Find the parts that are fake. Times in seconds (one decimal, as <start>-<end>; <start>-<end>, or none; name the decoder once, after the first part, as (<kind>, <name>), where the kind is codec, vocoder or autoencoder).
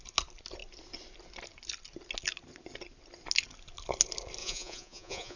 4.4-5.4 (vocoder, Vocos)